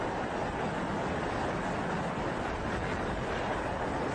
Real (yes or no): yes